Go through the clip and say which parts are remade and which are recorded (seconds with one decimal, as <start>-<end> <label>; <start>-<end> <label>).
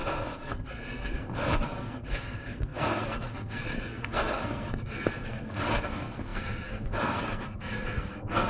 0.0-8.5 remade